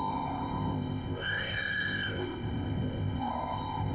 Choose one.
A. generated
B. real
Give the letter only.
A